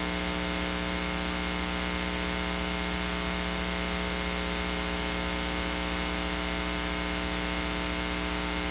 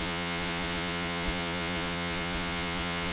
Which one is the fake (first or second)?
second